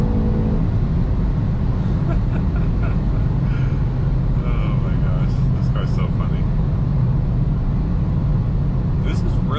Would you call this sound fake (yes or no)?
no